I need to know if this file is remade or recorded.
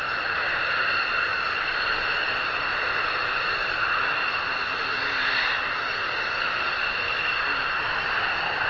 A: recorded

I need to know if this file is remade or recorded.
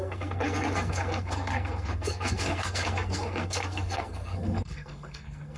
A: remade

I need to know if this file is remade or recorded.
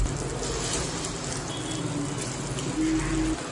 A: recorded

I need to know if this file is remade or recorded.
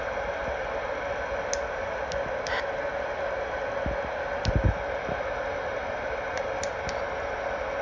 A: recorded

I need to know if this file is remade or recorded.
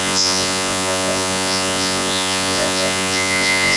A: remade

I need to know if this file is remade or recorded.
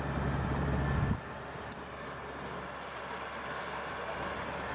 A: recorded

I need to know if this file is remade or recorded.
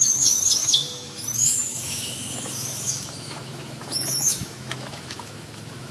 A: remade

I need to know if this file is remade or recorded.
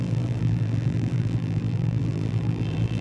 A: remade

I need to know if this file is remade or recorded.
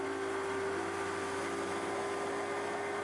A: recorded